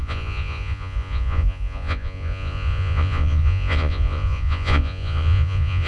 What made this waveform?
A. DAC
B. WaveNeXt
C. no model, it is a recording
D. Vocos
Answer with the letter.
D